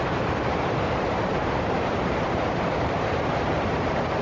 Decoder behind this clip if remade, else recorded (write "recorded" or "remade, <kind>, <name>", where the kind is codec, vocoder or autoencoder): remade, vocoder, BigVGAN v2